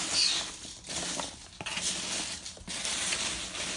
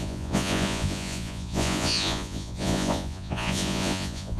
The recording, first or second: first